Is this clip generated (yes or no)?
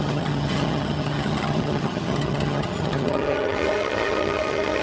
yes